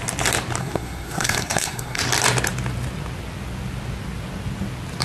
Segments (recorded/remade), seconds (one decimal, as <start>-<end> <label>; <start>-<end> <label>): 0.0-0.6 recorded; 0.6-2.0 remade; 2.0-5.0 recorded

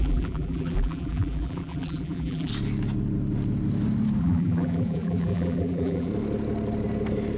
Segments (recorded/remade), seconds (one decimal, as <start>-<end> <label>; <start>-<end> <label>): 0.0-2.5 remade; 2.5-4.2 recorded; 4.2-6.1 remade; 6.1-7.4 recorded

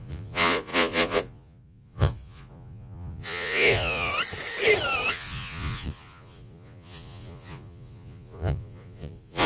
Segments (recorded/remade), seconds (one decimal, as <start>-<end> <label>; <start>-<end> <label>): 0.0-4.1 remade; 4.1-5.1 recorded; 5.1-9.5 remade

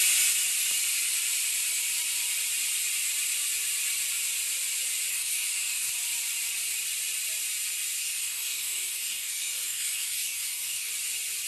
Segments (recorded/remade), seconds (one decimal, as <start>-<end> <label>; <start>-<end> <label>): 0.0-5.1 recorded; 5.1-5.9 remade; 5.9-8.0 recorded; 8.0-10.9 remade; 10.9-11.5 recorded